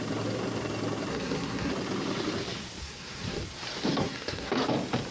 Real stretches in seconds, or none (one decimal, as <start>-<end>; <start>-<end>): 0.0-1.1; 1.7-2.8; 3.4-3.9; 4.5-5.1